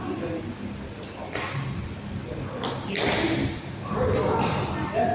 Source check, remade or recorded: recorded